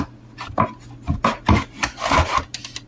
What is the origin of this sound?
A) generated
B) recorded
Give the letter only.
B